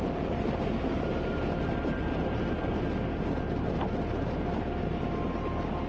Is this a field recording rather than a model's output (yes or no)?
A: yes